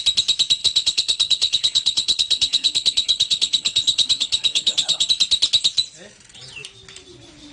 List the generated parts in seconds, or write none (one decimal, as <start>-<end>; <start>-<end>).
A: 0.6-5.1